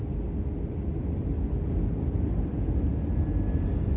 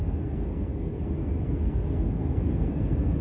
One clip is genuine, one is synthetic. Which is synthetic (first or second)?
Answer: second